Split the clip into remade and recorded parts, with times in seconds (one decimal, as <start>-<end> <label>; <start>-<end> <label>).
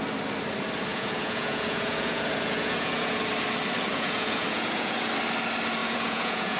0.0-0.9 recorded; 0.9-3.2 remade; 3.2-3.9 recorded; 3.9-5.1 remade; 5.1-5.8 recorded; 5.8-6.6 remade